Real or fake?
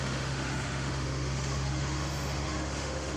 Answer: fake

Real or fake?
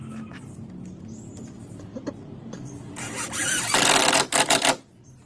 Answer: real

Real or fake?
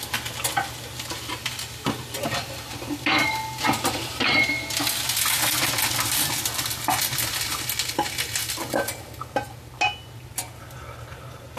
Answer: real